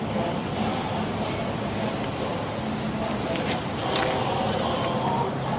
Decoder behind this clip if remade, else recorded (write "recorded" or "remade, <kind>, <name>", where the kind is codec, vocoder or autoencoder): recorded